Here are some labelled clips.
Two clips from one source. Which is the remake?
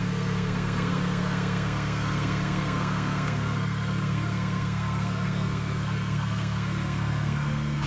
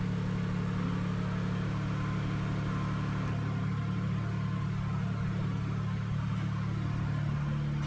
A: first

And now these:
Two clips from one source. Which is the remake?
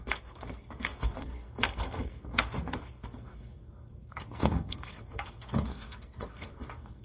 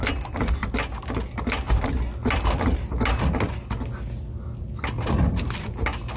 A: first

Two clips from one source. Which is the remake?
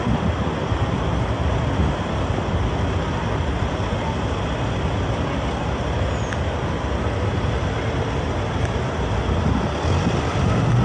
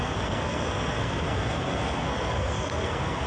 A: second